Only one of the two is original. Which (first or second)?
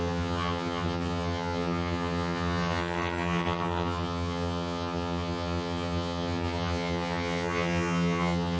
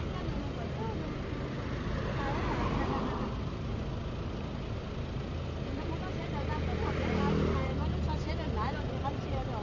second